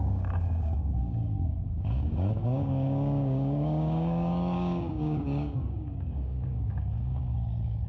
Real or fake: fake